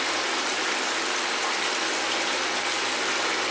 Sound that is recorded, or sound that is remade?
remade